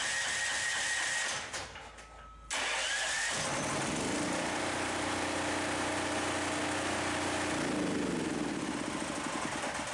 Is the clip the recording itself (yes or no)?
yes